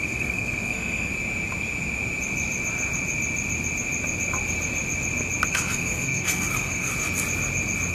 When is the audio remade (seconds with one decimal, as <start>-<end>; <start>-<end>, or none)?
0.0-1.1; 5.5-6.9